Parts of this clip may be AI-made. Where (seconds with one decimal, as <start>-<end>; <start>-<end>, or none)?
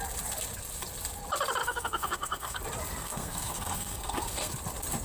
1.6-2.6; 3.0-4.5